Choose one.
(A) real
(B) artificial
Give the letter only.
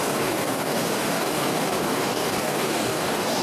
B